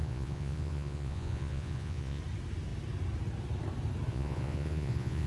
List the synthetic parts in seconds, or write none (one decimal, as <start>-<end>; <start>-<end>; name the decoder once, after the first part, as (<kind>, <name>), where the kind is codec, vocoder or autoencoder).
0.0-2.2 (vocoder, Vocos); 4.1-5.3